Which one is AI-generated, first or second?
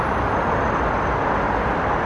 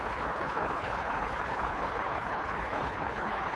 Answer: second